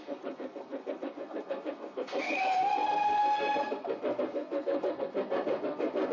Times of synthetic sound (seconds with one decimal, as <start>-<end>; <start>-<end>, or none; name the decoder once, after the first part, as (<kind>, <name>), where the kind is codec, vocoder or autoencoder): 0.0-6.1 (codec, SNAC)